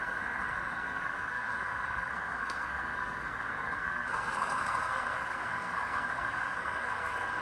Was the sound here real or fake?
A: fake